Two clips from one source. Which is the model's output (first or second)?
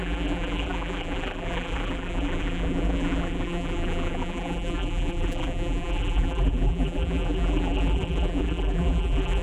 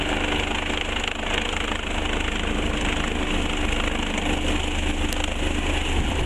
first